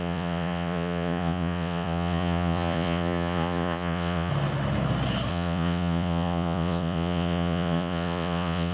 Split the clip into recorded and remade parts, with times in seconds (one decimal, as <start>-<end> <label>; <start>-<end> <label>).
0.0-4.3 remade; 4.3-5.3 recorded; 5.3-8.7 remade